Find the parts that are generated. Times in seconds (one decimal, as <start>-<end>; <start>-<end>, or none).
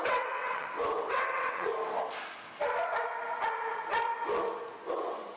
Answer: 0.0-1.7; 4.9-5.4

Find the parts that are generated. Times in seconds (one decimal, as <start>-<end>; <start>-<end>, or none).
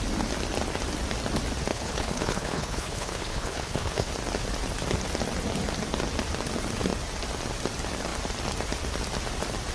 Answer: 1.7-4.1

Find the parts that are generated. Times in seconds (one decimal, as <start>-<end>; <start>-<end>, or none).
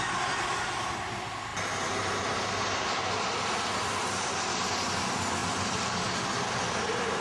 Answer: none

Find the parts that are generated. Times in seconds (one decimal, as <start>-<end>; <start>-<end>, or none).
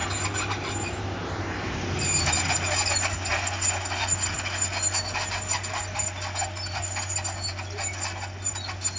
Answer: none